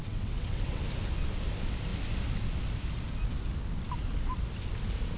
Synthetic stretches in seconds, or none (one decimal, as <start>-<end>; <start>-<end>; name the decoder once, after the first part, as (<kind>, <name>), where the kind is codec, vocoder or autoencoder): 0.0-0.8 (vocoder, WaveNeXt)